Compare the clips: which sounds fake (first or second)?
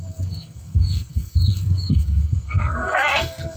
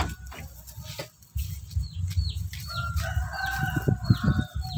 first